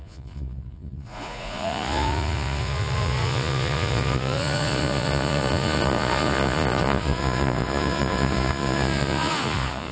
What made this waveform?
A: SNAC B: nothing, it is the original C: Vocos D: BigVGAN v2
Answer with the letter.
C